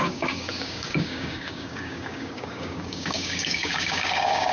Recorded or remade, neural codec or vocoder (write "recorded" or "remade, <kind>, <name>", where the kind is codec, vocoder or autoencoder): remade, codec, DAC